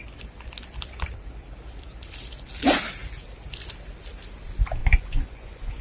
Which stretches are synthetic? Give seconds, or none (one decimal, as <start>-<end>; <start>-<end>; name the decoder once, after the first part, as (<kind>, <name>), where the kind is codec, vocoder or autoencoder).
4.8-5.8 (vocoder, Vocos)